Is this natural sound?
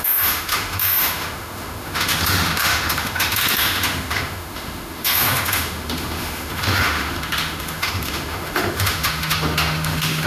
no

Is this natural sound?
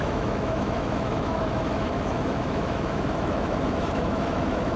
no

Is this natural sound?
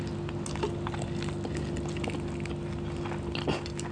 yes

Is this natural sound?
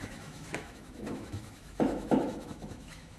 no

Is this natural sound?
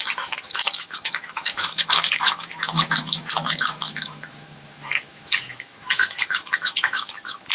no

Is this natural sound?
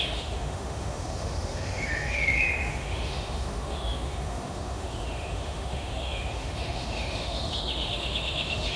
no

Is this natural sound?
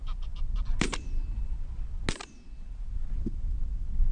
yes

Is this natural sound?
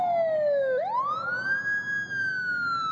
yes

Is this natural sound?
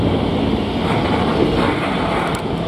yes